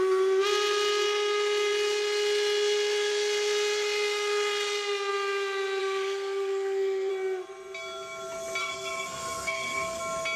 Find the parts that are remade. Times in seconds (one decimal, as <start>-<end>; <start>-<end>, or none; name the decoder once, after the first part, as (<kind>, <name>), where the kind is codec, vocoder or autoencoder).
5.8-7.1 (codec, SNAC); 8.6-10.0